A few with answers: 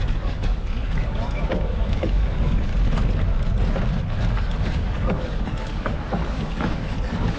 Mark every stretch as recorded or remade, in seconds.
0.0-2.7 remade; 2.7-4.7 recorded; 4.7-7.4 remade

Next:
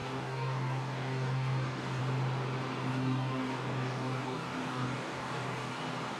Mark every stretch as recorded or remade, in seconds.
0.0-2.0 remade; 2.0-2.9 recorded; 2.9-5.7 remade; 5.7-6.2 recorded

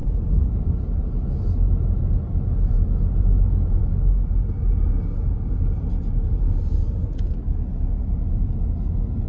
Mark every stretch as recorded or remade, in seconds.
0.0-9.3 recorded

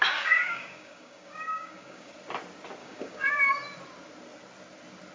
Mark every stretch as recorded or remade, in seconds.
0.0-2.1 remade; 2.1-2.8 recorded; 2.8-3.5 remade; 3.5-5.1 recorded

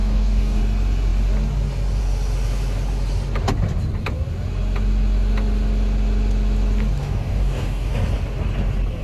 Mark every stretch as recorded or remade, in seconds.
0.0-0.6 remade; 0.6-7.0 recorded; 7.0-7.9 remade; 7.9-9.0 recorded

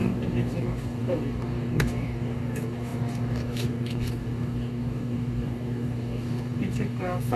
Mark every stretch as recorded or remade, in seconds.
0.0-7.4 remade